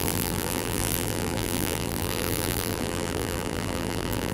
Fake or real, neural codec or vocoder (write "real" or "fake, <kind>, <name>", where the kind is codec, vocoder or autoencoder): fake, vocoder, BigVGAN v2